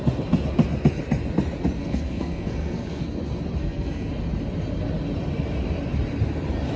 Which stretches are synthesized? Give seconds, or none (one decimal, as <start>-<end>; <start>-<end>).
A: 1.8-3.0; 3.6-4.1